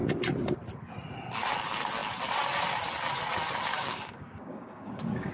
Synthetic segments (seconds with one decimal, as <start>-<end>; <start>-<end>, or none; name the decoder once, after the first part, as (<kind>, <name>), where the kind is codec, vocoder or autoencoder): 3.7-5.3 (codec, DAC)